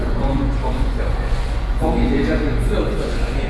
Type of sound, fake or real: fake